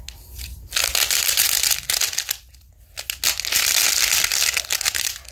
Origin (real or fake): real